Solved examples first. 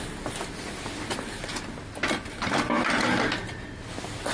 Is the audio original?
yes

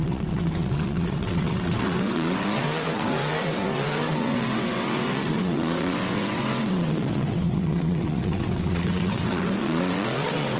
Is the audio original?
no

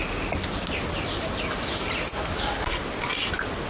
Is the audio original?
yes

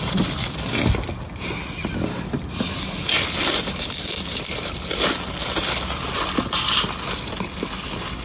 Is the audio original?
yes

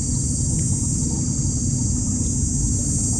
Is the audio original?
yes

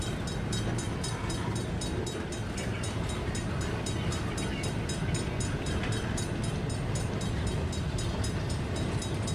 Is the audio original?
yes